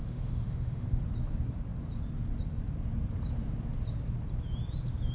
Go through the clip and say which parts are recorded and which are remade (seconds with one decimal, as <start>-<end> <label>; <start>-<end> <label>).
0.0-1.0 remade; 1.0-5.1 recorded